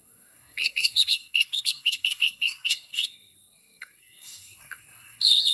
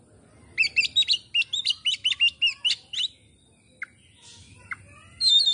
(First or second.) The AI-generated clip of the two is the first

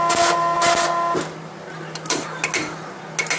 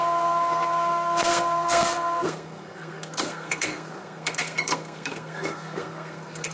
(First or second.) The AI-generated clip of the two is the second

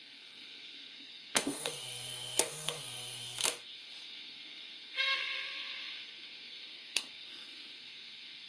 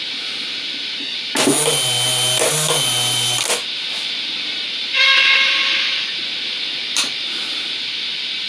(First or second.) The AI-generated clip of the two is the first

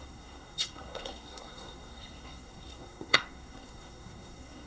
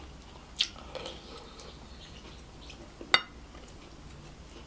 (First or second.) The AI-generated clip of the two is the first